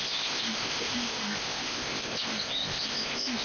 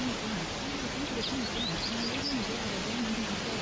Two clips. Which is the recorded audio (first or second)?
second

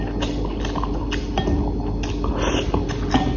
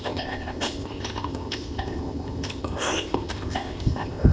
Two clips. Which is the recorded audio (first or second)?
first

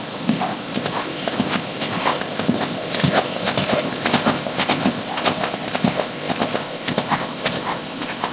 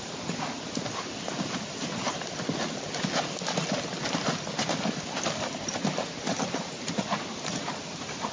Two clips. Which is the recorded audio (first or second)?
second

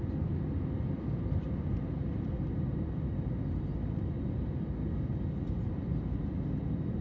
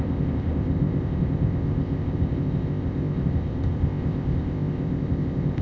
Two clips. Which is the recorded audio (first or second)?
first